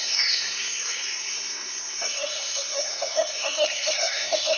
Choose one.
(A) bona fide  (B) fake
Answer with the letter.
B